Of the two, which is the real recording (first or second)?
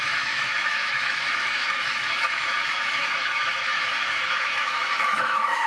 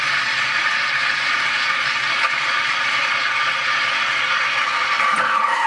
second